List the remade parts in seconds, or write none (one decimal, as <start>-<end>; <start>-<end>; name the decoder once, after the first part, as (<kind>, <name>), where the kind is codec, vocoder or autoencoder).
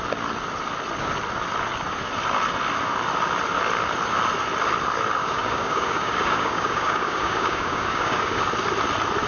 5.2-8.4 (codec, DAC)